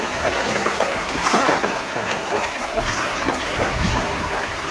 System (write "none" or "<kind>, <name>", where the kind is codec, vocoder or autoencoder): codec, SNAC